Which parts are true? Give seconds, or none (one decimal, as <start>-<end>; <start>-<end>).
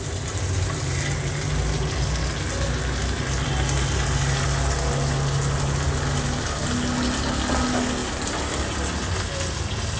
0.0-10.0